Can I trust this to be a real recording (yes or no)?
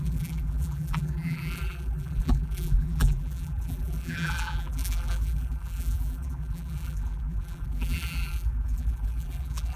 no